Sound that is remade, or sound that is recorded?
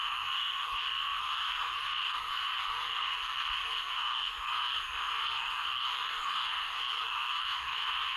remade